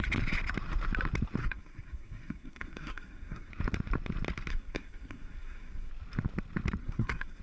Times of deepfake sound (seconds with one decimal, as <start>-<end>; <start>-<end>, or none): 1.4-3.5; 4.5-5.9; 6.8-7.4